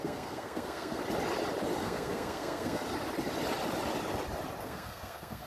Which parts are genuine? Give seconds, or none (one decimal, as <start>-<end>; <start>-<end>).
1.0-1.8; 2.8-4.6